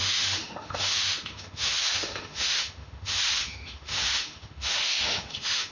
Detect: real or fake fake